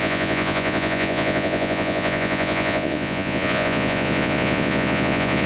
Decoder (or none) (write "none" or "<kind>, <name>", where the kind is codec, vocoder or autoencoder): vocoder, Vocos